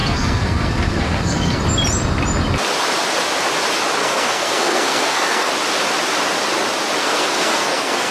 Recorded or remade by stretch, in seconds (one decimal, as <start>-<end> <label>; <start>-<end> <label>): 0.0-1.6 remade; 1.6-4.0 recorded; 4.0-5.5 remade; 5.5-7.0 recorded; 7.0-8.1 remade